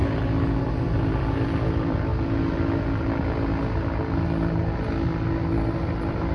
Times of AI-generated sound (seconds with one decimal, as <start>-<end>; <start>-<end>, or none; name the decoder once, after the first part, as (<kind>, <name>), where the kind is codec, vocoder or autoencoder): 0.6-2.1 (vocoder, BigVGAN v2); 4.9-6.3